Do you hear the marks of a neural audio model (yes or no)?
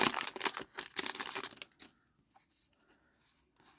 no